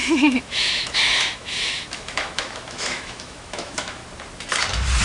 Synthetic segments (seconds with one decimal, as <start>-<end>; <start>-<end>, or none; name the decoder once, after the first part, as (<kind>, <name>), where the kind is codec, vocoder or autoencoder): 0.0-4.0 (autoencoder, DAC-VAE)